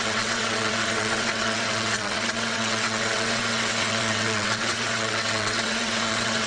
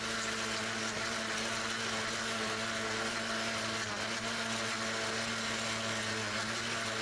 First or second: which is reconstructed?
first